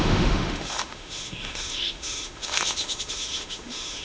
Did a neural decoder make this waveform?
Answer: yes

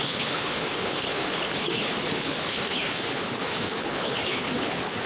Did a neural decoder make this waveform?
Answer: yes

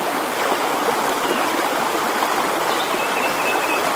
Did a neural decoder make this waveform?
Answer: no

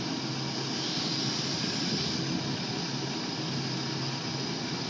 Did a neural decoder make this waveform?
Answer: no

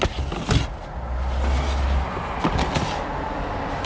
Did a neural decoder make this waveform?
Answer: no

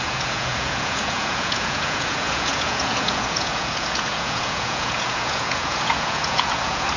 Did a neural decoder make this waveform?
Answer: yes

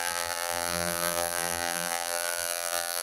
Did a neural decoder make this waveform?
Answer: yes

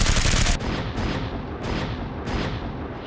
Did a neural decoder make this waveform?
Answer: no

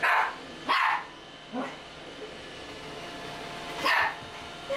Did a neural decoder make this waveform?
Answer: no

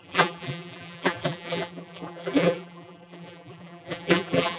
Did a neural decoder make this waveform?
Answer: yes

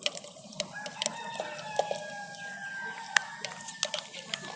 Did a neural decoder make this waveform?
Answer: no